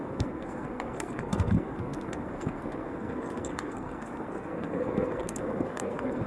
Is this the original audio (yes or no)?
no